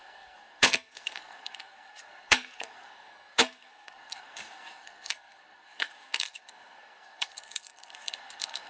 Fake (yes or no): yes